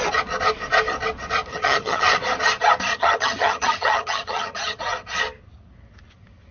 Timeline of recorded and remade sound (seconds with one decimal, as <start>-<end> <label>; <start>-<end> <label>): 0.0-1.5 recorded; 1.5-2.2 remade; 2.2-2.9 recorded; 2.9-4.8 remade; 4.8-6.5 recorded